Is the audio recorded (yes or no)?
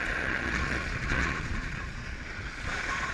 no